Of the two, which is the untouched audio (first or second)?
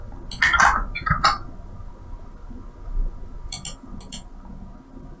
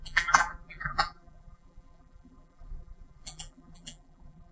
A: first